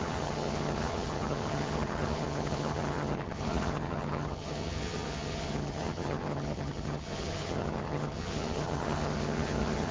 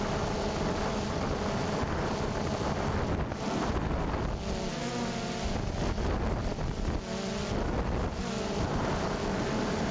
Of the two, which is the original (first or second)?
second